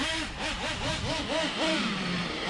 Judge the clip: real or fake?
fake